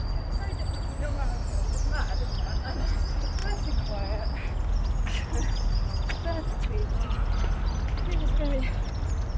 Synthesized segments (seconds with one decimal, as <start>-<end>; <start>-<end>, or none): none